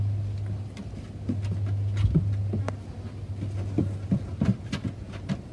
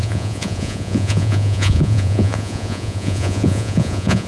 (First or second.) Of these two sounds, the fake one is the second